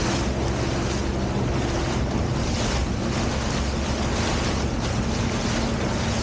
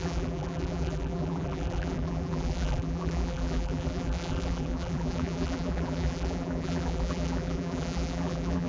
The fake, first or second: second